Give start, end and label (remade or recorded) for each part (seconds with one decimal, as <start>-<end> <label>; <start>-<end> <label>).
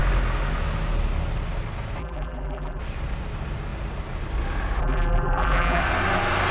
0.0-2.0 recorded; 2.0-2.8 remade; 2.8-4.8 recorded; 4.8-5.8 remade; 5.8-6.5 recorded